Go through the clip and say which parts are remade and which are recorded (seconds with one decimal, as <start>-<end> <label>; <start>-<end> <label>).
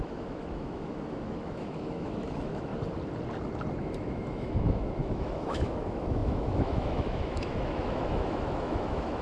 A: 0.0-2.7 remade; 2.7-3.8 recorded; 3.8-9.2 remade